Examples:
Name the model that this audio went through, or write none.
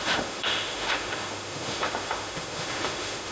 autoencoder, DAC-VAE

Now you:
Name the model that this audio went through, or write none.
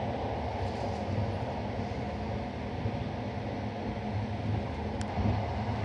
none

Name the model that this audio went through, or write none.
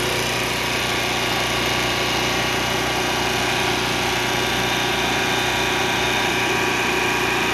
none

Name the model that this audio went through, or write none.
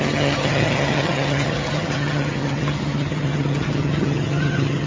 vocoder, HiFi-GAN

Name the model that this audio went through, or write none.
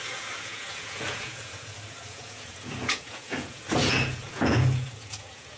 vocoder, Vocos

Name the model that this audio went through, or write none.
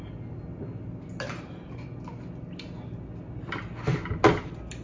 none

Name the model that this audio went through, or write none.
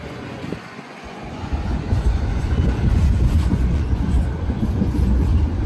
vocoder, Vocos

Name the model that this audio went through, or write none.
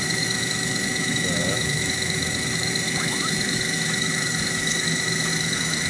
autoencoder, DAC-VAE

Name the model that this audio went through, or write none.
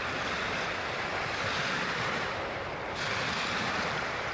none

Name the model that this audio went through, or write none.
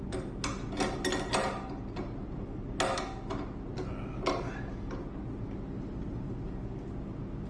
none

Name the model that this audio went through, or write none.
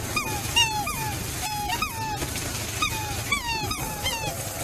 none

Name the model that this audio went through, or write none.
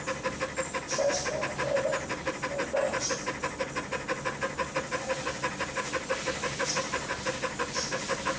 none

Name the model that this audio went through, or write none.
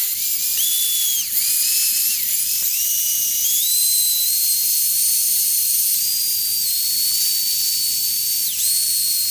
none